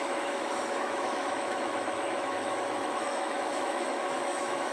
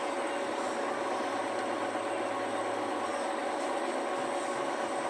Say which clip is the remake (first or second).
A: first